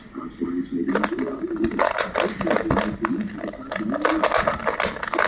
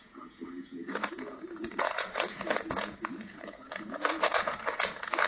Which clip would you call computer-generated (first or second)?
second